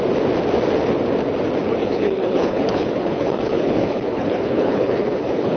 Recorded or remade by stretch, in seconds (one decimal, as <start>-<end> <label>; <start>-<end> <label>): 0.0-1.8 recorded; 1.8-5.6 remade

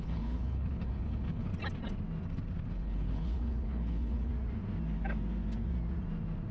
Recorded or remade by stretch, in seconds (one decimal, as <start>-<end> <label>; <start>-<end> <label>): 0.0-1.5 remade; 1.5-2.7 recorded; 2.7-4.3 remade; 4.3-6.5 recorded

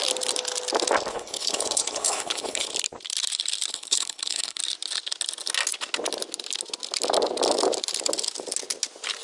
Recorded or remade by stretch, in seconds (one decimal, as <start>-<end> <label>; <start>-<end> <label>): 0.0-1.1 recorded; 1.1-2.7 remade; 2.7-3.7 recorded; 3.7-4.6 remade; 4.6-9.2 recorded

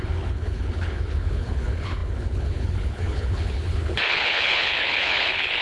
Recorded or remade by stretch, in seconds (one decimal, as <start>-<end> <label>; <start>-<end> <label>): 0.0-5.6 remade